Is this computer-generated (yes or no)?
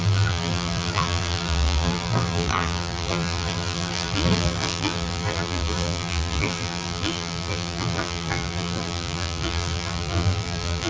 yes